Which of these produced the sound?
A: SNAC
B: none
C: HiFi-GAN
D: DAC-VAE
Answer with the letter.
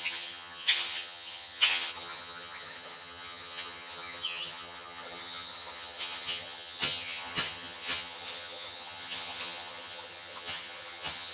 C